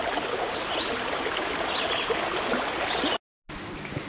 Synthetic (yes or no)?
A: no